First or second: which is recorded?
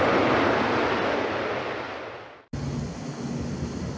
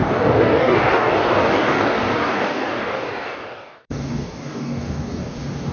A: first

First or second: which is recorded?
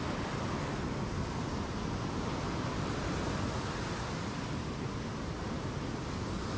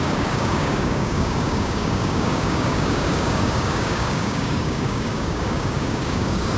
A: first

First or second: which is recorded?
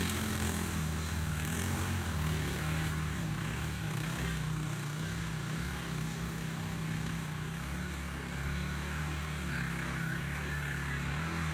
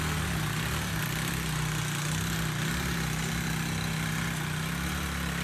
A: second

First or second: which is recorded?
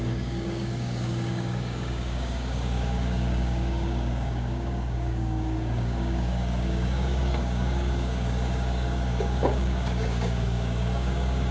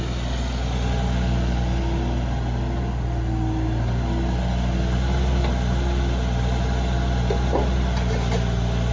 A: second